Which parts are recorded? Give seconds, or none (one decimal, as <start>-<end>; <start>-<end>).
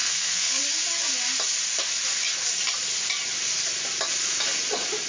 0.6-5.1